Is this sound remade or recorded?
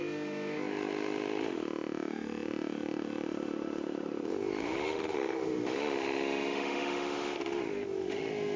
remade